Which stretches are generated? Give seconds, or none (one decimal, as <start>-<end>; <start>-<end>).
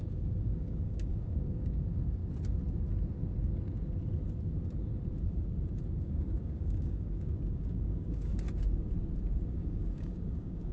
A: 0.0-2.2; 6.0-8.3; 9.5-10.7